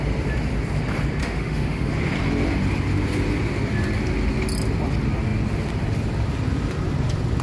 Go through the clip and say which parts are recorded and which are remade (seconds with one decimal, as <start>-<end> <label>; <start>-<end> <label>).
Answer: 0.0-1.2 recorded; 1.2-1.9 remade; 1.9-7.4 recorded